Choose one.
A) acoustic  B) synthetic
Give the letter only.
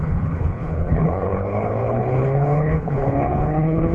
B